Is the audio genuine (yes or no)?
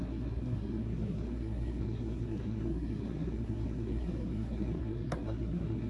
no